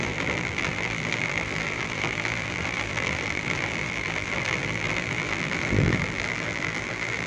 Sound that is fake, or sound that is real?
fake